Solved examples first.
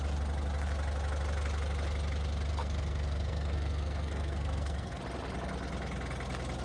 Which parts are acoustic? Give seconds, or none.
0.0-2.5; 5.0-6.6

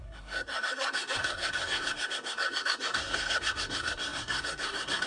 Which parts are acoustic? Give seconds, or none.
none

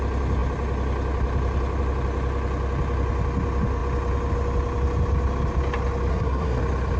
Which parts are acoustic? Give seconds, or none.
0.0-6.1; 6.6-7.0

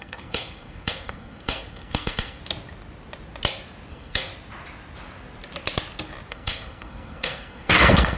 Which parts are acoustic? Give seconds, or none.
2.4-3.9; 4.3-6.3

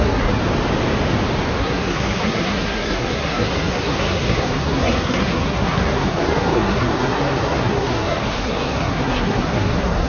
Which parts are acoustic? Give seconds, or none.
0.4-1.6